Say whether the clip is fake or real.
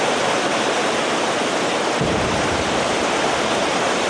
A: fake